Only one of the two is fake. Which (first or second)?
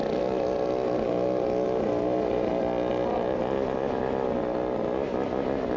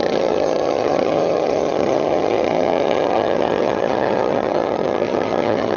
second